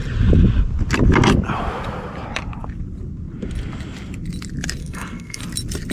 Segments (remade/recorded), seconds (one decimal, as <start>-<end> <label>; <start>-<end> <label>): 0.0-4.8 recorded; 4.8-5.4 remade; 5.4-5.9 recorded